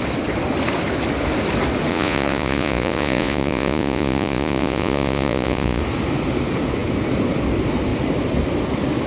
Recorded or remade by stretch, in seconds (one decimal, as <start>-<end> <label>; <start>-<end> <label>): 0.0-1.9 recorded; 1.9-5.8 remade; 5.8-9.1 recorded